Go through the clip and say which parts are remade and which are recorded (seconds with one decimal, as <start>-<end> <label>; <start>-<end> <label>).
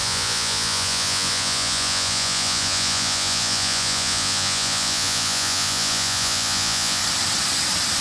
0.0-7.0 remade; 7.0-8.0 recorded